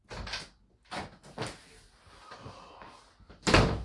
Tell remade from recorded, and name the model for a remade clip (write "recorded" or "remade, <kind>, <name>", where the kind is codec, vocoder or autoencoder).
recorded